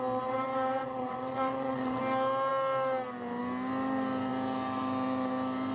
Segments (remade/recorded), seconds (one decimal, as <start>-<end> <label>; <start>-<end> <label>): 0.0-0.8 recorded; 0.8-2.0 remade; 2.0-5.7 recorded